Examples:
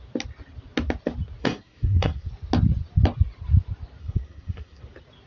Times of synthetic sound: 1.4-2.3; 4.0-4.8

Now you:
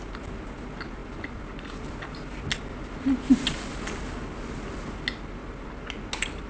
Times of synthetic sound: none